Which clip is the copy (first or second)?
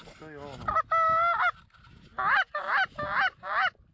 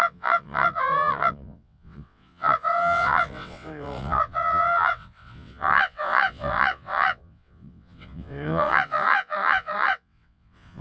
second